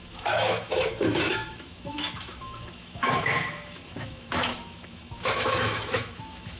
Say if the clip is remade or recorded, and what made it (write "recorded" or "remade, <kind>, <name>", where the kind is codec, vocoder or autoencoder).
remade, autoencoder, DAC-VAE